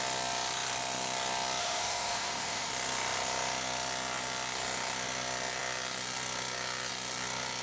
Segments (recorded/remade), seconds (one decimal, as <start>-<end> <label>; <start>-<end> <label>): 0.0-1.6 recorded; 1.6-2.7 remade; 2.7-7.6 recorded